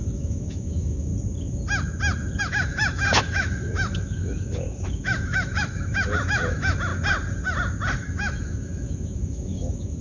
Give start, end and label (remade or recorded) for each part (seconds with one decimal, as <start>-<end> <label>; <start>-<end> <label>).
0.0-1.1 remade; 1.1-2.4 recorded; 2.4-6.9 remade; 6.9-7.9 recorded; 7.9-10.0 remade